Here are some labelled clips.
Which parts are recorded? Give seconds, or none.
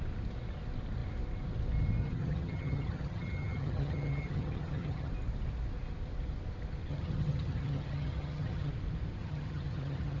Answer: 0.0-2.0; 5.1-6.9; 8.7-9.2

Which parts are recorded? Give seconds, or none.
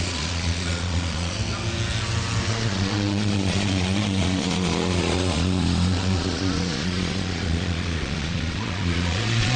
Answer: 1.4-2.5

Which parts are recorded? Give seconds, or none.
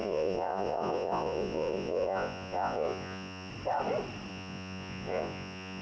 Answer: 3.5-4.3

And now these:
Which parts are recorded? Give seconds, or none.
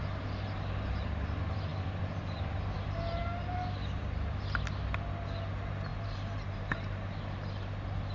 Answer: 0.0-5.9; 6.5-8.1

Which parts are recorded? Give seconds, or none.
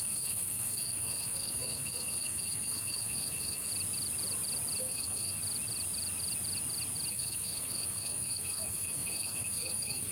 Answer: 3.7-4.8; 5.4-7.1